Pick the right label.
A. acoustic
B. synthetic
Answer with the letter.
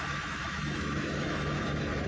B